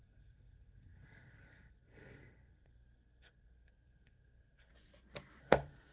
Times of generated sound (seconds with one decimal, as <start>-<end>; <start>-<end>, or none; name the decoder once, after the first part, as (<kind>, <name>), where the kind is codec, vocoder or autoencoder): 0.0-4.7 (codec, SNAC); 5.4-5.9